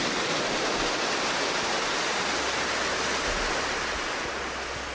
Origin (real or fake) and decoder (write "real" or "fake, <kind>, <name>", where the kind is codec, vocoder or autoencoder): real